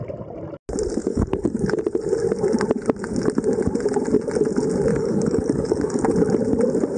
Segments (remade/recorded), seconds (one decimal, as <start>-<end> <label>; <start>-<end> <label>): 0.0-1.0 recorded; 1.0-1.8 remade; 1.8-4.9 recorded; 4.9-6.0 remade; 6.0-7.0 recorded